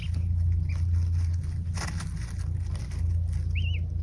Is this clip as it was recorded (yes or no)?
yes